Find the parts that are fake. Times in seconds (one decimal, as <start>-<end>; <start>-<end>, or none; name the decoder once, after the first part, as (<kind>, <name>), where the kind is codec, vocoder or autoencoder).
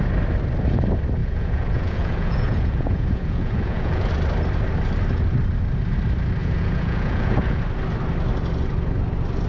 1.2-4.1 (vocoder, Vocos); 6.4-7.6